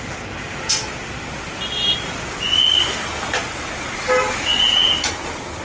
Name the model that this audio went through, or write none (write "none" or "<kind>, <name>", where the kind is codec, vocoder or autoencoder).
none